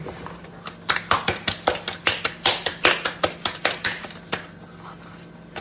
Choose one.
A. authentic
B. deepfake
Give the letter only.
A